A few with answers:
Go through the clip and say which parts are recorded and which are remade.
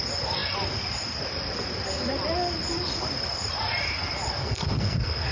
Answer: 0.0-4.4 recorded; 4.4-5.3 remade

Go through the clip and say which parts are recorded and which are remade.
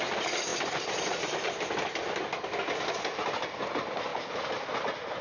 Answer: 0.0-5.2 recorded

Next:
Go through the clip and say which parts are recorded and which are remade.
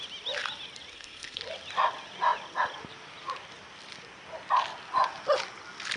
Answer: 0.0-0.9 recorded; 0.9-1.4 remade; 1.4-6.0 recorded